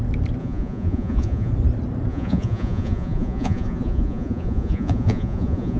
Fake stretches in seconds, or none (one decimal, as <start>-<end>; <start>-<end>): 0.4-1.5; 2.1-5.8